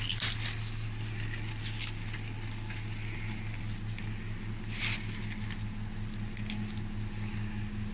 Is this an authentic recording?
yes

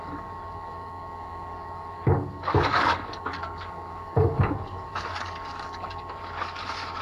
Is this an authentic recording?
no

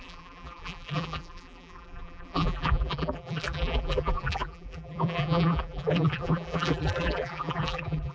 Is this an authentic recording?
no